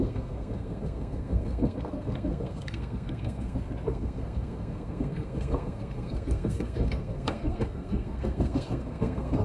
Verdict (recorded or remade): remade